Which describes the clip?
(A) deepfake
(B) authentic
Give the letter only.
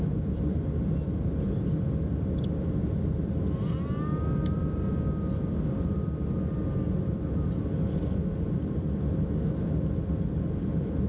B